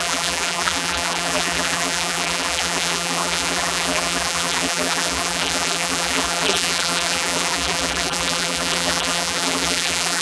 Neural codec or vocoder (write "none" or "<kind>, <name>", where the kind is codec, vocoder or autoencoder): vocoder, BigVGAN v2